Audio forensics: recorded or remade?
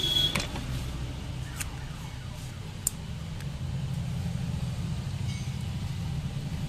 recorded